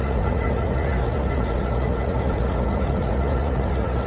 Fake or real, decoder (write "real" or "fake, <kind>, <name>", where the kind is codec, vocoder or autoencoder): fake, vocoder, Vocos